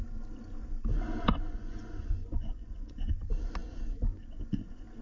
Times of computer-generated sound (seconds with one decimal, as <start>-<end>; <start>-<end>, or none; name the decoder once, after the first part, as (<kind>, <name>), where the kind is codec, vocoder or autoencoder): 0.9-3.2 (vocoder, Vocos)